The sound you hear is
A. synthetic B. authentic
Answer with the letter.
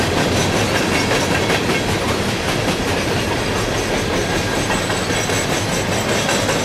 B